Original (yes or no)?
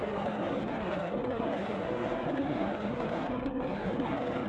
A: no